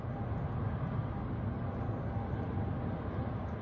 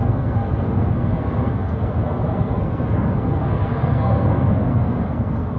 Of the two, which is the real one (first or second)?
first